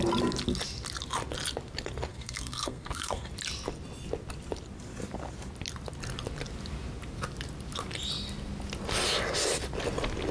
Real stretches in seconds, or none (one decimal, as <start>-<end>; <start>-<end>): 0.0-2.1; 3.3-10.3